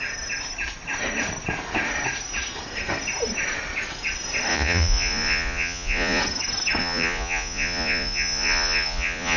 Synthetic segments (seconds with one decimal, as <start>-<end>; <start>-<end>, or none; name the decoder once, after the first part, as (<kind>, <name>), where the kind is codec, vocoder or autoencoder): 4.5-6.2 (vocoder, Vocos); 6.8-9.4